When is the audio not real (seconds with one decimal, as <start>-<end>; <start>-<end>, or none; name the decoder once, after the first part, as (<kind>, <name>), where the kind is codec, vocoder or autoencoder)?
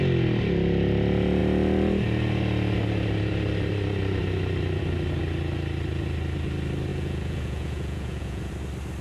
6.9-8.5 (vocoder, Vocos)